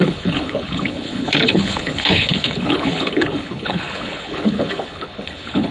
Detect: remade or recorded remade